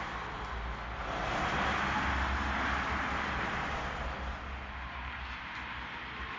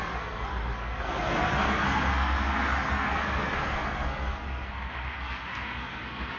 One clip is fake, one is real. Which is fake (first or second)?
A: second